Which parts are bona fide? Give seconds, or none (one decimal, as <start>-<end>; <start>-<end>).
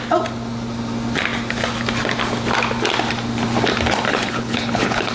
0.0-4.1